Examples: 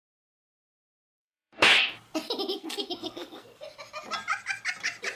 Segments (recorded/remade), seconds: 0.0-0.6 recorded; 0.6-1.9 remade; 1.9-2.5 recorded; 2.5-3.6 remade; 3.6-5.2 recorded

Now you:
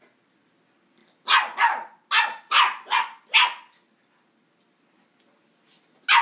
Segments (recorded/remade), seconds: 0.0-6.2 recorded